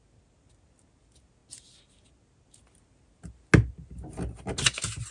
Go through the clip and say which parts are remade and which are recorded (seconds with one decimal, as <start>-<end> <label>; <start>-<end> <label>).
0.0-5.1 recorded